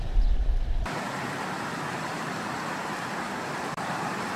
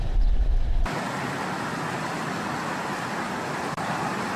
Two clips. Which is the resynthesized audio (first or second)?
first